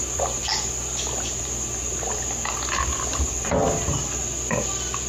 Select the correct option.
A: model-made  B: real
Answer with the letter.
B